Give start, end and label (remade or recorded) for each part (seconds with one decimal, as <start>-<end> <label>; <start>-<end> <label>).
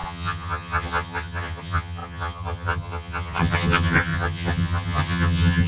0.0-5.7 remade